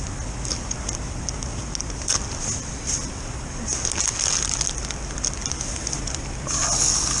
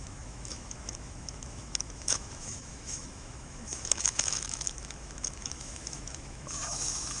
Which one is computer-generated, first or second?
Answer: second